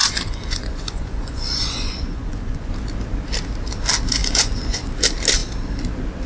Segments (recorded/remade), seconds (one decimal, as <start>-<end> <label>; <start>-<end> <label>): 0.0-2.7 remade; 2.7-4.2 recorded; 4.2-4.9 remade; 4.9-6.3 recorded